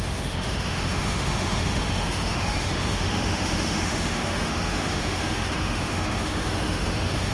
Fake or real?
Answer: fake